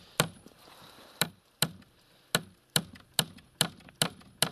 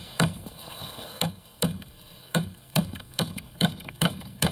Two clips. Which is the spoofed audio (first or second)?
second